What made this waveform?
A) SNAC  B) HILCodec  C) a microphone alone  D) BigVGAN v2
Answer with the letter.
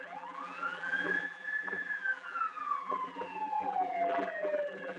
D